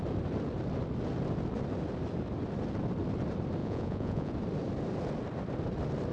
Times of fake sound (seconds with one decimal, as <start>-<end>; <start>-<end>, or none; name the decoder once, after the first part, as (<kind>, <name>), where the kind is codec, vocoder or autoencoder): 3.6-4.3 (vocoder, Vocos)